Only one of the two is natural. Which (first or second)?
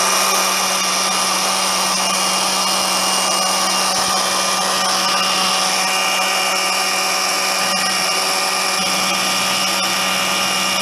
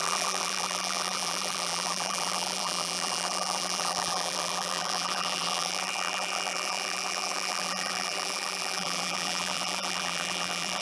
first